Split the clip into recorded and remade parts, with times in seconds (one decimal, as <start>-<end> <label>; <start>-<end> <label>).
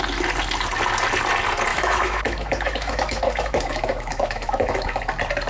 0.0-1.7 recorded; 1.7-5.0 remade; 5.0-5.5 recorded